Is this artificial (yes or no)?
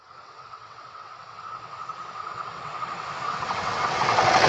yes